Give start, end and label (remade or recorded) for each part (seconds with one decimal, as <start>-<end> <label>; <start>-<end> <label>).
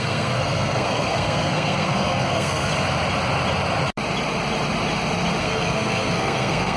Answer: 0.0-2.7 remade; 2.7-5.4 recorded; 5.4-6.8 remade